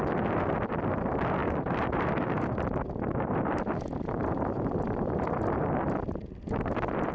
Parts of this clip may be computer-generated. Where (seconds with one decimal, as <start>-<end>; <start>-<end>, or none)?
1.4-5.7